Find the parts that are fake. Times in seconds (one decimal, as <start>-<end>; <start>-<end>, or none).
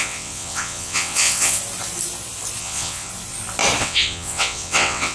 0.0-1.6; 2.6-3.1; 3.8-5.1